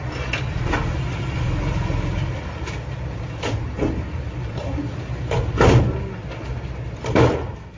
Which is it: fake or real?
real